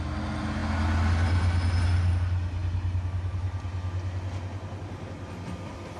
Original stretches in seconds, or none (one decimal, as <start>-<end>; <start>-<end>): 0.0-6.0